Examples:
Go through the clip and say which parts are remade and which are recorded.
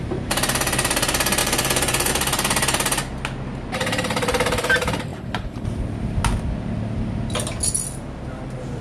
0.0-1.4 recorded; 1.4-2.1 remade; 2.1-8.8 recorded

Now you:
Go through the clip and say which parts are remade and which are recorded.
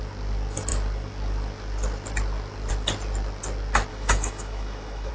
0.0-3.9 recorded; 3.9-5.1 remade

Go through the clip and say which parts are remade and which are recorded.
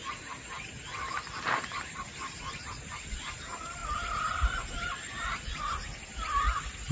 0.0-6.9 recorded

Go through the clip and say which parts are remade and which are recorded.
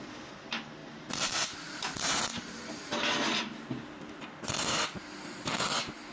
0.0-0.8 recorded; 0.8-2.6 remade; 2.6-6.1 recorded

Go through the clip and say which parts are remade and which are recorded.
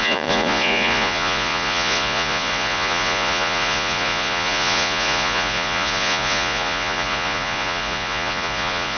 0.0-9.0 remade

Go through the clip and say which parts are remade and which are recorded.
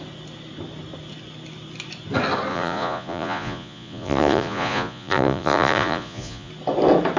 0.0-2.5 recorded; 2.5-6.5 remade; 6.5-7.2 recorded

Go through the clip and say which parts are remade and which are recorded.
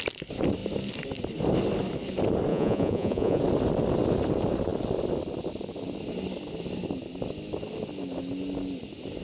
0.0-2.5 recorded; 2.5-3.4 remade; 3.4-9.2 recorded